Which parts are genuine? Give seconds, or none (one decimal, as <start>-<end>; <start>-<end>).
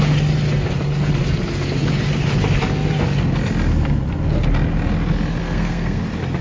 0.0-5.4; 6.0-6.4